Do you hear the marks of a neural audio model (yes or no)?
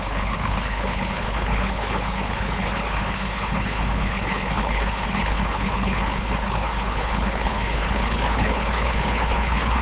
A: yes